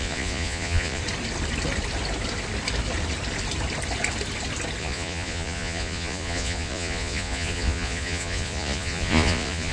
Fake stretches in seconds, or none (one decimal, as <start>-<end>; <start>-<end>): 0.0-1.0; 4.8-9.7